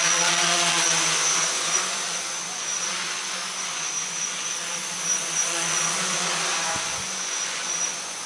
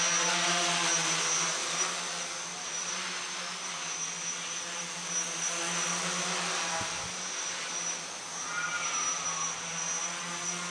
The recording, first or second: second